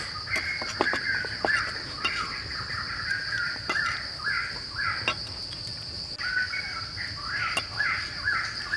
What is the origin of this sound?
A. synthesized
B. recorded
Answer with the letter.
B